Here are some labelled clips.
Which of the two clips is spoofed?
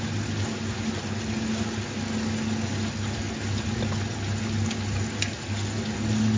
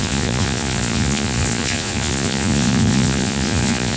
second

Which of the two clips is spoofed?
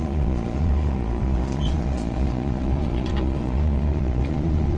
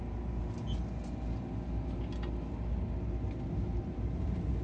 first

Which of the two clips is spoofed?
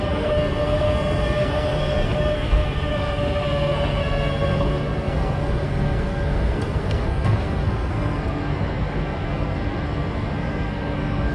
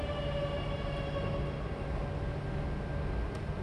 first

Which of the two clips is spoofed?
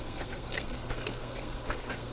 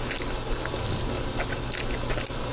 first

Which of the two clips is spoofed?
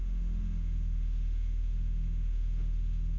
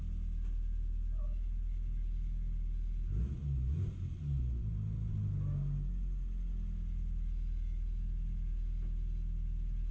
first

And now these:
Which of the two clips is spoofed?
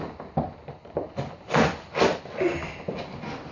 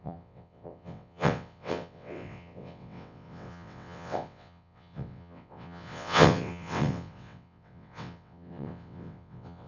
second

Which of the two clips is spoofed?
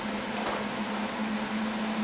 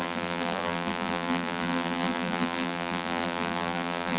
second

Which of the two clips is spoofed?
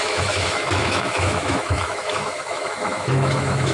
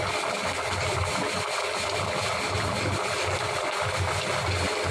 first